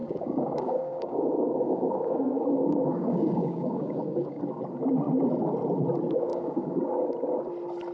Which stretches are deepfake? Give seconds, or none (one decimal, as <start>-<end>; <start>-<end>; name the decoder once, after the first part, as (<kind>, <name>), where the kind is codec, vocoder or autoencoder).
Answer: 0.0-4.4 (codec, DAC); 6.3-6.8